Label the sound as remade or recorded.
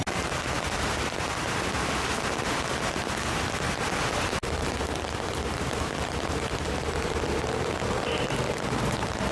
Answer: recorded